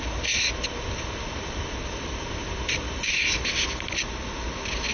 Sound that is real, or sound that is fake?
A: real